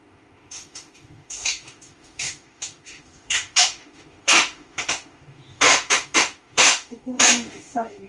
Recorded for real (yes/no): no